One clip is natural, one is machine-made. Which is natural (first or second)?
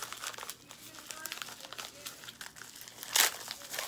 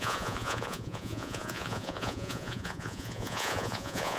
first